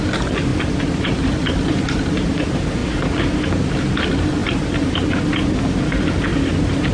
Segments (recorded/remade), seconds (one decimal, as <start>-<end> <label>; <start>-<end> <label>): 0.0-2.8 recorded; 2.8-3.5 remade; 3.5-4.4 recorded; 4.4-5.1 remade; 5.1-6.3 recorded; 6.3-6.9 remade

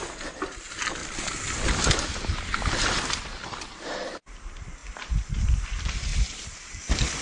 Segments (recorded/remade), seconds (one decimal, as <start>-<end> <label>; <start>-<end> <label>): 0.0-1.0 remade; 1.0-1.9 recorded; 1.9-7.2 remade

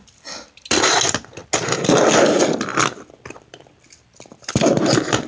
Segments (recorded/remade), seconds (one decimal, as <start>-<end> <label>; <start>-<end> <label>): 0.0-2.7 recorded; 2.7-3.8 remade; 3.8-5.3 recorded

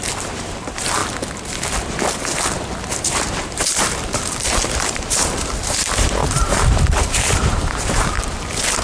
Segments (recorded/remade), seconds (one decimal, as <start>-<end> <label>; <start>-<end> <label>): 0.0-1.0 remade; 1.0-3.0 recorded; 3.0-8.8 remade

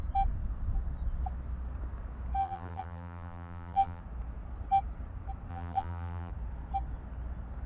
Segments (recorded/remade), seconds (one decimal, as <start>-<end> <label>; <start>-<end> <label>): 0.0-2.4 recorded; 2.4-4.0 remade; 4.0-5.5 recorded; 5.5-6.3 remade; 6.3-7.7 recorded